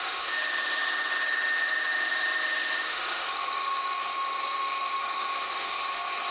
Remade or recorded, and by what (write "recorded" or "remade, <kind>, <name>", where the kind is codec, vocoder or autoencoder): remade, autoencoder, DAC-VAE